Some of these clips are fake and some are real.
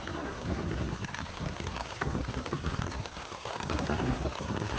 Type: fake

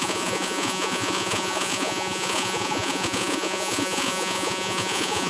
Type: fake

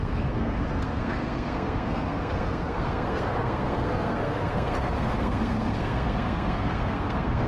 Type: fake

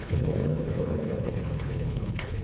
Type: fake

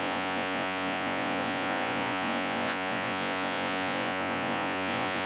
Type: fake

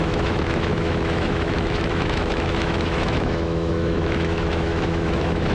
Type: fake